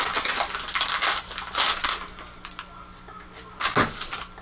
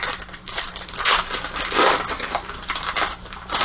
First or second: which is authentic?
first